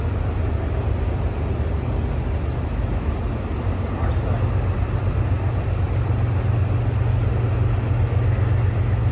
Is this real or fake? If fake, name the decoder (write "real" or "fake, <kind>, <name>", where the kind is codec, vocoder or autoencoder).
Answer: real